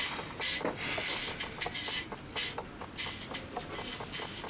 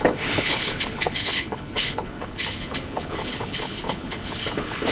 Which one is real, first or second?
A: first